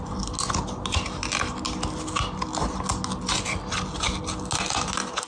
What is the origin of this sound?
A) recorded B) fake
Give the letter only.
A